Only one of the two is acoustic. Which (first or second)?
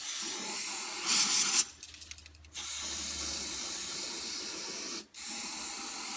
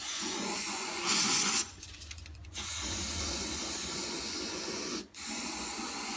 first